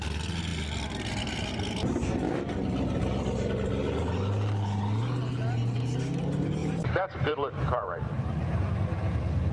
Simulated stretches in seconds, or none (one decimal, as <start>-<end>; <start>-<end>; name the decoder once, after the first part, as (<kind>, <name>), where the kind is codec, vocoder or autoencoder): 6.6-8.7 (vocoder, BigVGAN v2)